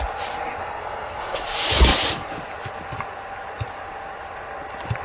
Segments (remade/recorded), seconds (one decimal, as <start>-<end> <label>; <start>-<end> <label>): 0.0-0.6 recorded; 0.6-1.4 remade; 1.4-5.0 recorded